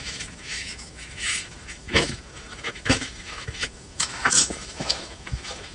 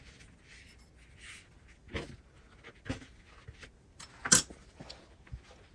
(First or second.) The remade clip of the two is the first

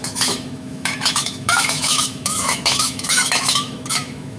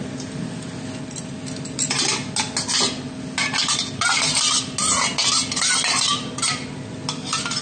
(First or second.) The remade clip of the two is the first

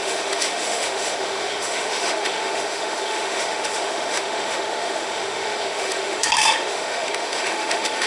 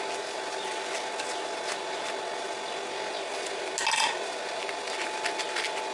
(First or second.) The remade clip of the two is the first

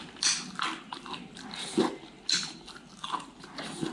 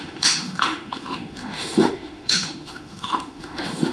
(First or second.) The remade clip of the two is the second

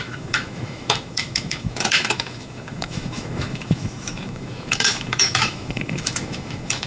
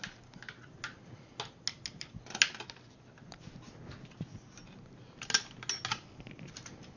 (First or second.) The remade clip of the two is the first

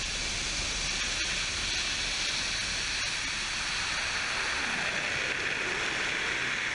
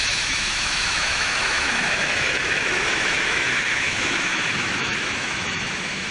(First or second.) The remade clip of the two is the second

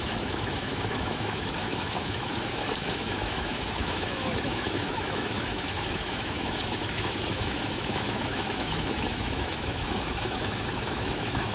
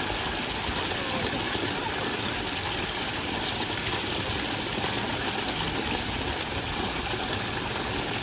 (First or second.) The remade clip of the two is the first